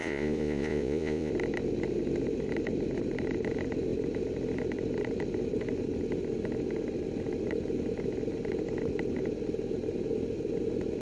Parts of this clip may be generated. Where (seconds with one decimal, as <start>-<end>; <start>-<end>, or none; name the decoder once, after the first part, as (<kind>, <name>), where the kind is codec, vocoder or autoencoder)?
0.0-1.3 (vocoder, Vocos)

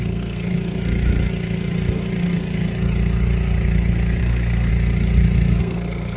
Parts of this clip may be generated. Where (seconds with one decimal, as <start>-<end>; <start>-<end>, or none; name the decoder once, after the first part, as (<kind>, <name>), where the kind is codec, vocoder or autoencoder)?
0.0-0.5 (codec, SNAC); 4.2-4.7; 5.6-6.2